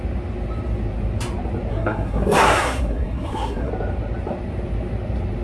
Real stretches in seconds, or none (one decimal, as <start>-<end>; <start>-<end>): 0.0-1.7; 3.7-5.4

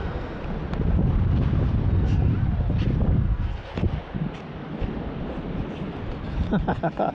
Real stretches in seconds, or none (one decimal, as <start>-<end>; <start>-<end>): 0.4-1.9; 2.3-3.2; 3.7-7.1